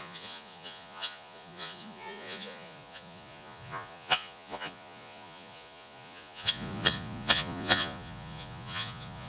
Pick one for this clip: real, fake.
fake